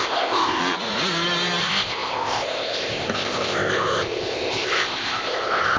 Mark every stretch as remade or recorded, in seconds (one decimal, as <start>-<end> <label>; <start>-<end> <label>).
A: 0.0-0.6 remade; 0.6-1.6 recorded; 1.6-5.8 remade